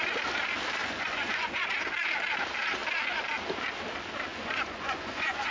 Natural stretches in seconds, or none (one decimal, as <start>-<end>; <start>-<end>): 0.0-0.8; 1.6-4.3